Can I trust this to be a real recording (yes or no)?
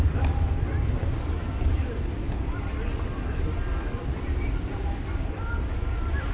no